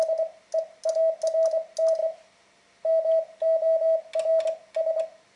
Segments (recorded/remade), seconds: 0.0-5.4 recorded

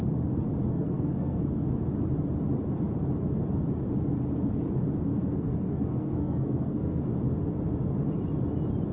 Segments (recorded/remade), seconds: 0.0-0.7 recorded; 0.7-1.7 remade; 1.7-5.1 recorded; 5.1-7.1 remade; 7.1-8.9 recorded